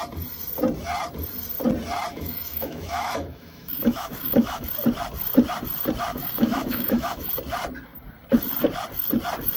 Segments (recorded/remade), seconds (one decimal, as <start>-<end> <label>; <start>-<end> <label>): 0.0-2.1 recorded; 2.1-4.7 remade; 4.7-6.1 recorded; 6.1-7.3 remade; 7.3-9.6 recorded